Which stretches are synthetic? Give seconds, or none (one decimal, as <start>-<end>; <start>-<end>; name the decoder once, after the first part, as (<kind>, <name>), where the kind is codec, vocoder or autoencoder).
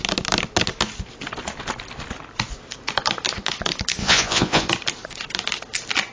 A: 4.0-4.7 (vocoder, Vocos)